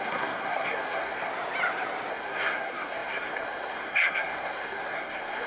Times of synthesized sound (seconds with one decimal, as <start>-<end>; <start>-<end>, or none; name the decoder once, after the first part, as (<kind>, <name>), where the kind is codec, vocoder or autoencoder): 0.0-1.3 (codec, SNAC); 2.1-5.5